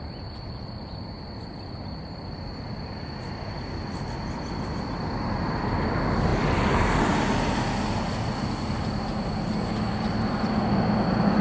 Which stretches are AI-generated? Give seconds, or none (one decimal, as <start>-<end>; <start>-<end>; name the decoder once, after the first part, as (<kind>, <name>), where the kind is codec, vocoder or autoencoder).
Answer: 6.3-7.0 (vocoder, BigVGAN v2)